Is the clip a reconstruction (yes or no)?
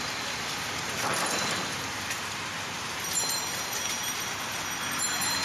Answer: yes